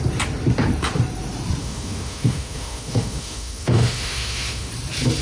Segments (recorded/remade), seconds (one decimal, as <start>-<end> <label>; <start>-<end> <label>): 0.0-1.6 recorded; 1.6-4.7 remade; 4.7-5.2 recorded